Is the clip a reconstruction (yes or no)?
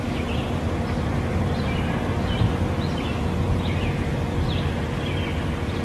no